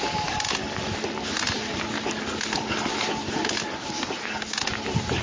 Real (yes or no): yes